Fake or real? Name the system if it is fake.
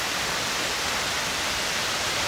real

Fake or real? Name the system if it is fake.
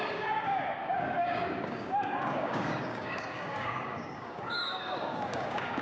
fake, codec, DAC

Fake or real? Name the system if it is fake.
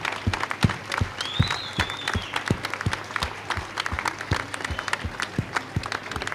real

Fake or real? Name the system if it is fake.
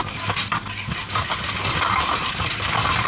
real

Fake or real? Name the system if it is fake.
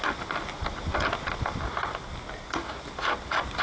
real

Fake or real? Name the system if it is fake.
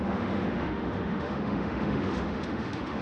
fake, autoencoder, DAC-VAE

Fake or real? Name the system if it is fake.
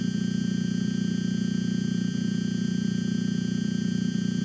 real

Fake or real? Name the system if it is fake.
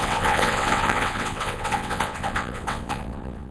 fake, vocoder, WaveNeXt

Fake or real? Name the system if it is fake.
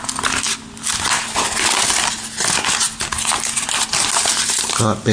real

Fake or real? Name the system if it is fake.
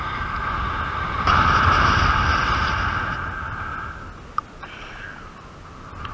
real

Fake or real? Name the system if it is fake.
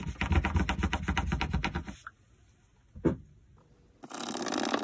real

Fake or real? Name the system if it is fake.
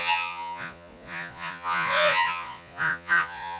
fake, vocoder, Vocos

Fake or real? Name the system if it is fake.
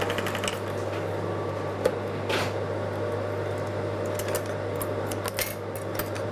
real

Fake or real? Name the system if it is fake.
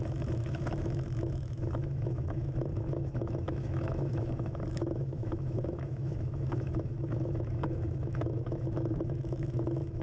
fake, autoencoder, DAC-VAE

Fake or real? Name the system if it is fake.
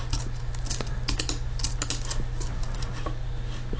real